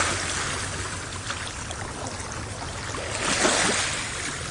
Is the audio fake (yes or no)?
no